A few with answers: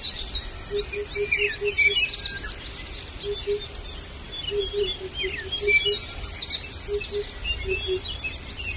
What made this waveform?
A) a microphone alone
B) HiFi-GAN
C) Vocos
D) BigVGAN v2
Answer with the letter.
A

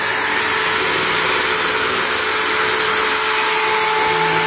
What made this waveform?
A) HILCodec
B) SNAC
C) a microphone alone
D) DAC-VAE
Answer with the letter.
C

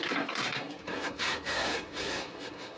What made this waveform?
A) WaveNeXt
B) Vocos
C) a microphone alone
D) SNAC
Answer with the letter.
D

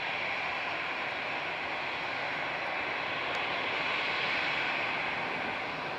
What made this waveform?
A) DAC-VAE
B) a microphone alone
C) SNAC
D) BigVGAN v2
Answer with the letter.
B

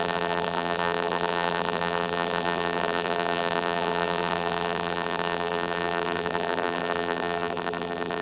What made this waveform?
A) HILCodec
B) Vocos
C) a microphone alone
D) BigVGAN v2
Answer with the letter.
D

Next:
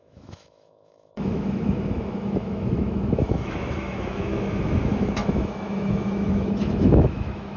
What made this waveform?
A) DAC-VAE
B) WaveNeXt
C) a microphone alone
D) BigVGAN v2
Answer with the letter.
A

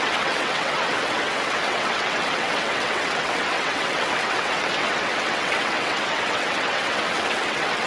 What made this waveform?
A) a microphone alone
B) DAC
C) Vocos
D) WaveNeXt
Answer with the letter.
D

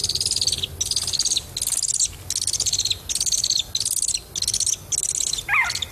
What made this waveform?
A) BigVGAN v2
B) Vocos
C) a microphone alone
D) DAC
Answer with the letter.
C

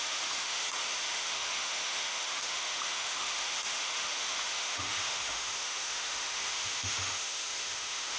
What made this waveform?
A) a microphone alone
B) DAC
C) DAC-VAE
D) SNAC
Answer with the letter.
C